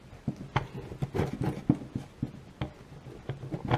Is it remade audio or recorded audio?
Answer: recorded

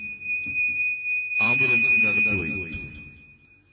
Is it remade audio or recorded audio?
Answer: remade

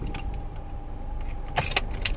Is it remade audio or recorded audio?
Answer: recorded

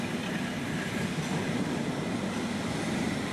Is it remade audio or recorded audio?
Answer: recorded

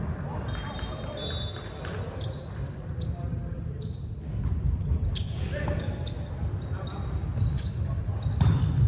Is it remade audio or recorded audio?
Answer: recorded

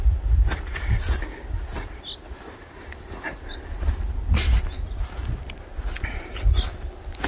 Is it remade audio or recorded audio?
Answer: recorded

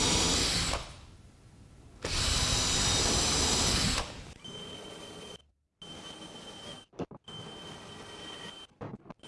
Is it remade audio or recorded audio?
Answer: recorded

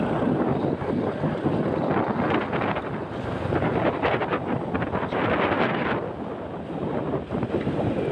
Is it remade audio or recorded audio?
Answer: recorded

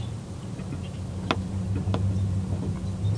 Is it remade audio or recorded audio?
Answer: recorded